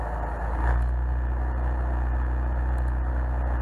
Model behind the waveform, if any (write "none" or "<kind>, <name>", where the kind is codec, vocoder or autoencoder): none